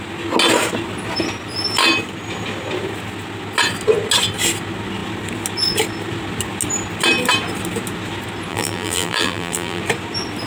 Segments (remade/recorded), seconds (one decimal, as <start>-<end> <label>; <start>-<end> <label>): 0.0-8.5 recorded; 8.5-9.8 remade; 9.8-10.5 recorded